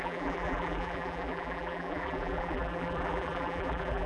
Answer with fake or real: fake